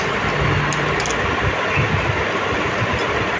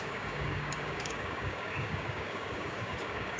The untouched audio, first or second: first